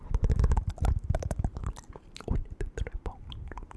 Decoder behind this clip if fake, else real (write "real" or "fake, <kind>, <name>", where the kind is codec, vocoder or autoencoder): fake, vocoder, BigVGAN v2